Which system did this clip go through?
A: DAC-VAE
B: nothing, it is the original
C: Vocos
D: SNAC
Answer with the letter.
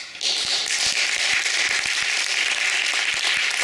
B